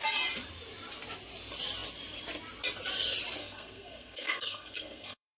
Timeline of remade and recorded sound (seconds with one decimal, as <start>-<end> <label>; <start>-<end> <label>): 0.0-3.4 recorded; 3.4-5.4 remade